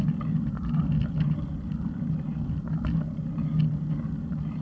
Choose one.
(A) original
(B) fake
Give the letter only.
A